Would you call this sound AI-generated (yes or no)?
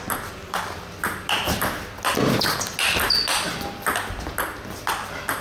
no